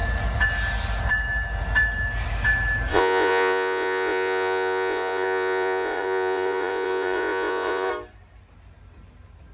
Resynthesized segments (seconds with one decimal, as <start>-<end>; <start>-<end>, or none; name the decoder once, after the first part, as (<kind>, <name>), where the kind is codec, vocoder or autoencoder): 2.9-7.9 (vocoder, Vocos)